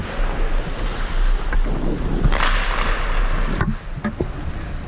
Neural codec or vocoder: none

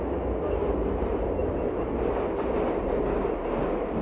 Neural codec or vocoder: none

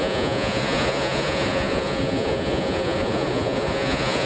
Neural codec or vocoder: vocoder, Vocos